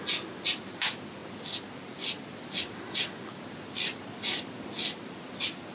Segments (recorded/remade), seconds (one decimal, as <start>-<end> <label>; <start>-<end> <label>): 0.0-5.7 recorded